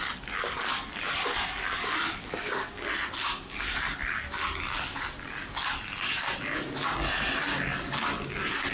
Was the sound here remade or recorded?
recorded